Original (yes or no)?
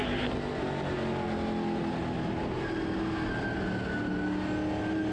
yes